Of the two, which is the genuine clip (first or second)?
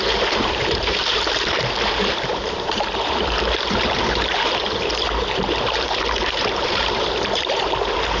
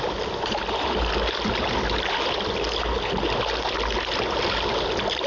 second